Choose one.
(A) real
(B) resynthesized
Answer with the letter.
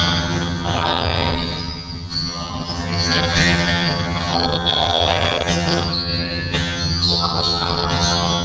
B